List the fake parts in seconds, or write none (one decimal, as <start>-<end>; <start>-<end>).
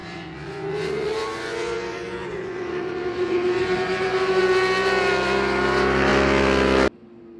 0.0-4.4